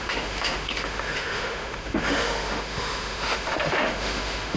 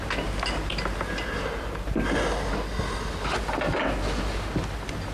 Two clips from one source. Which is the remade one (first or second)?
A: first